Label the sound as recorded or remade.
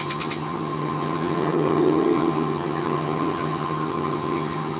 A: remade